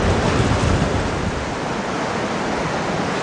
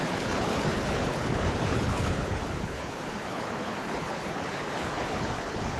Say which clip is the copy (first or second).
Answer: second